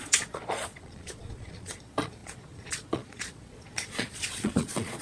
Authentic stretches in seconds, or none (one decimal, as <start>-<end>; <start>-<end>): none